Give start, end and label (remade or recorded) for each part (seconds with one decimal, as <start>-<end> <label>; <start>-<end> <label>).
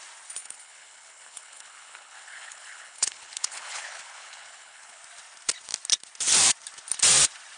0.0-0.4 recorded; 0.4-5.0 remade; 5.0-7.6 recorded